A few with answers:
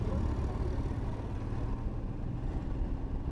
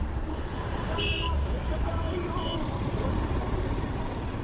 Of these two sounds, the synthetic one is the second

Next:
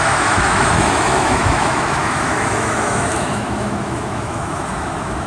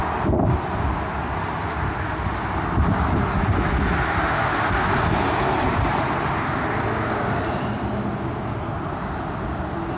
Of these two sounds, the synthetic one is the first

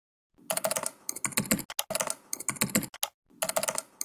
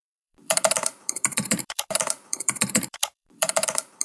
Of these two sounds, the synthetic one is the second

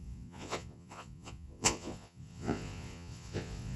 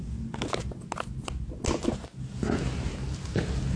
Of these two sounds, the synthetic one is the first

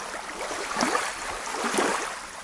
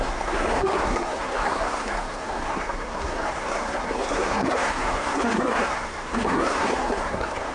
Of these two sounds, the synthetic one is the second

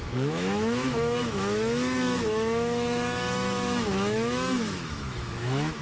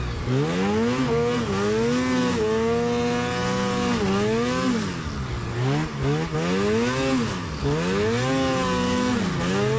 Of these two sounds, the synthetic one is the first